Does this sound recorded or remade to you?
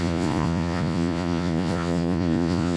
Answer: remade